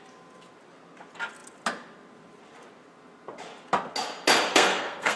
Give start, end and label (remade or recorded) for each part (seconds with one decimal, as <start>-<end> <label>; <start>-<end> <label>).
0.0-4.5 recorded; 4.5-5.2 remade